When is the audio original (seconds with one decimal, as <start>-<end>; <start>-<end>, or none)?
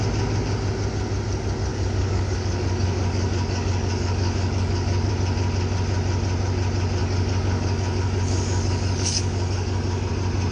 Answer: 0.0-1.7; 5.1-7.0; 10.1-10.5